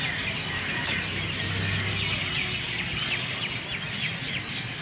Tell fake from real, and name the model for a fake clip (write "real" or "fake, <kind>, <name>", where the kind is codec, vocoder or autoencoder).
real